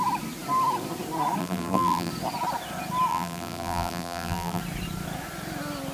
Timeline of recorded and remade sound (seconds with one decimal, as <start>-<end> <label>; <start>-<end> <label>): 0.0-1.4 recorded; 1.4-2.1 remade; 2.1-3.1 recorded; 3.1-4.6 remade; 4.6-5.9 recorded